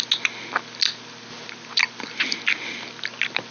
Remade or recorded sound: recorded